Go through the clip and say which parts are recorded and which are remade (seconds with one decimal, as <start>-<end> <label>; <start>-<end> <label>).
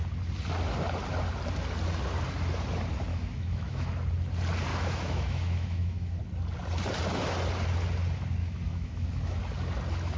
0.0-3.1 recorded; 3.1-3.9 remade; 3.9-4.7 recorded; 4.7-6.2 remade; 6.2-8.4 recorded; 8.4-9.4 remade; 9.4-10.2 recorded